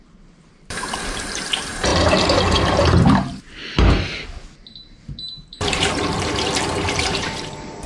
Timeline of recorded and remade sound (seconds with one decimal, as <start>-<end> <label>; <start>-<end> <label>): 0.0-3.6 remade; 3.6-5.3 recorded; 5.3-7.9 remade